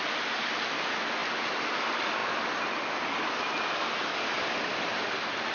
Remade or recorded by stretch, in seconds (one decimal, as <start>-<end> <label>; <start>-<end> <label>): 0.0-5.5 recorded